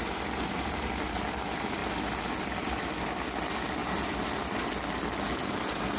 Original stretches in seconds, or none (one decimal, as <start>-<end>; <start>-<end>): 0.0-3.8; 4.4-6.0